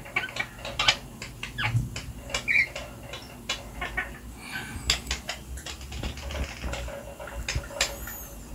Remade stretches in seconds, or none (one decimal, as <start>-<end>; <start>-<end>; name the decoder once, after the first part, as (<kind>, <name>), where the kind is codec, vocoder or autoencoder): none